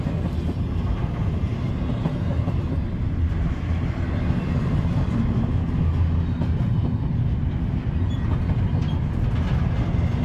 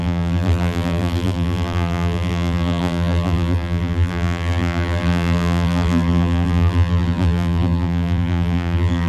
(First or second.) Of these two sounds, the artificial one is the second